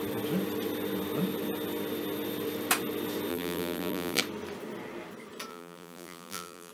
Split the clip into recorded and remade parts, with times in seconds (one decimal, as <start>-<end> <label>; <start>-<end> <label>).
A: 0.0-3.3 recorded; 3.3-4.2 remade; 4.2-5.5 recorded; 5.5-6.7 remade